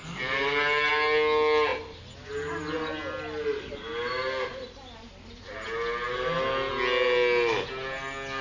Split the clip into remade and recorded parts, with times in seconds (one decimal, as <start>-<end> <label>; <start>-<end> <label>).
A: 0.0-8.4 recorded